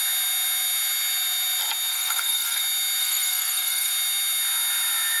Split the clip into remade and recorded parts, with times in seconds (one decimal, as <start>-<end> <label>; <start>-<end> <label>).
0.0-1.9 recorded; 1.9-2.6 remade; 2.6-3.0 recorded; 3.0-3.9 remade; 3.9-5.2 recorded